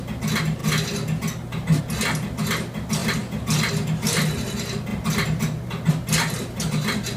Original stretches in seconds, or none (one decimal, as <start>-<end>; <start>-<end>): 0.0-7.2